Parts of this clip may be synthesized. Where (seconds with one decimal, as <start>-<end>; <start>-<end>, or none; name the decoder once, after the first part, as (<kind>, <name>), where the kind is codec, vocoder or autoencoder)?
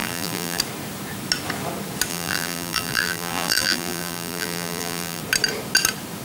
0.0-0.6 (vocoder, BigVGAN v2); 2.1-5.2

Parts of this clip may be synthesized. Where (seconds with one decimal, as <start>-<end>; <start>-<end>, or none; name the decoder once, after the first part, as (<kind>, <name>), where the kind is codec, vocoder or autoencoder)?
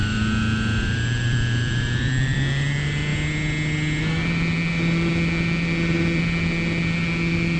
0.0-3.1 (vocoder, BigVGAN v2); 4.0-7.6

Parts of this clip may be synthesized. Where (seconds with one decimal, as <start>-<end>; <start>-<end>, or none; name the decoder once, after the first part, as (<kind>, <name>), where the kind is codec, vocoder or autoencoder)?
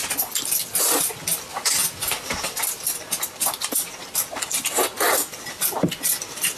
none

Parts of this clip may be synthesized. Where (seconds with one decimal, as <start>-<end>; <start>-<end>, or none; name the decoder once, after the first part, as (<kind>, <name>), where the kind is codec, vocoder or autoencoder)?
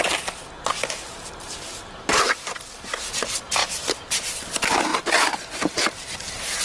3.6-4.4 (vocoder, BigVGAN v2); 4.9-6.6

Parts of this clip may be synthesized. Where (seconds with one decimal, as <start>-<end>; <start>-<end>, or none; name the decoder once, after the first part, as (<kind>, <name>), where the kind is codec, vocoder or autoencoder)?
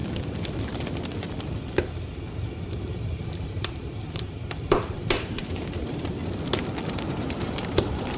3.1-6.2 (vocoder, BigVGAN v2); 6.9-8.2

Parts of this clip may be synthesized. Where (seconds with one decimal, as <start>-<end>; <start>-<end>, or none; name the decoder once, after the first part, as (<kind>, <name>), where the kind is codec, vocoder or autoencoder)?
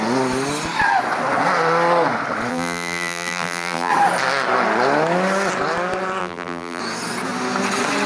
2.5-3.9 (vocoder, BigVGAN v2); 6.2-6.8